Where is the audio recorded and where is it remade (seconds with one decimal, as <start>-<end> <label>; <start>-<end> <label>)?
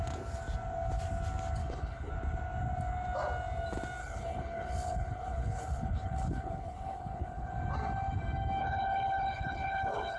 0.0-1.6 recorded; 1.6-2.1 remade; 2.1-4.0 recorded; 4.0-7.5 remade; 7.5-8.6 recorded; 8.6-10.2 remade